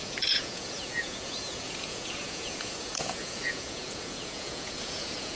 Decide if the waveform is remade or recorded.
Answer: remade